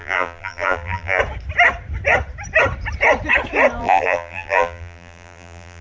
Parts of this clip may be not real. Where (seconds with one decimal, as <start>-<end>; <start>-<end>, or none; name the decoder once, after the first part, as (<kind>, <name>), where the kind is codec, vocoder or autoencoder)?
0.0-1.2 (vocoder, BigVGAN v2); 3.8-5.8